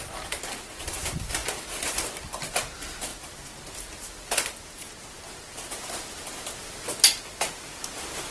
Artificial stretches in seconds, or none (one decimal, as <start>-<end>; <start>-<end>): none

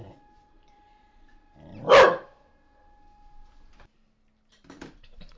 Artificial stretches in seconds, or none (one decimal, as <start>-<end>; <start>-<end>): 0.0-1.3; 4.5-5.4

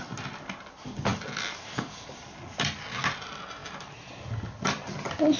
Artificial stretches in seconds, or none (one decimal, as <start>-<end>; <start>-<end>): none

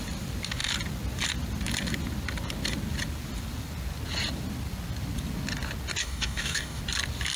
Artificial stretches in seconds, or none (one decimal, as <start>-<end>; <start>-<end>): 6.0-6.8

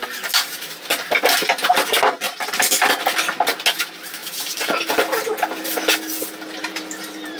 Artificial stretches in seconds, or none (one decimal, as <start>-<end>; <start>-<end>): 4.2-4.9; 6.6-7.4